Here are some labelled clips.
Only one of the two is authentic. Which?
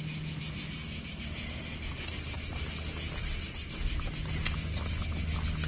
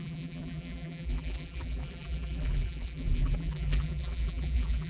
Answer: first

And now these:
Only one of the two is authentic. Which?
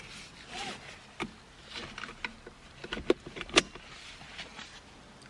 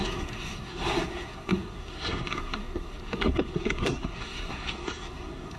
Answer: first